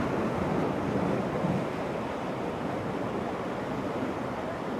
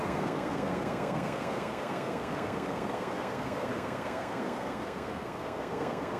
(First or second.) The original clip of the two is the first